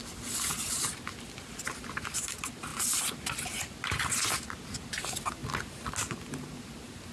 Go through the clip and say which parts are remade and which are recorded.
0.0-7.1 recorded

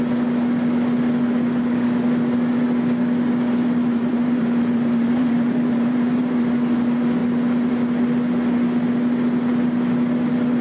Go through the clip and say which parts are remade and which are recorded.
0.0-3.9 recorded; 3.9-6.4 remade; 6.4-10.6 recorded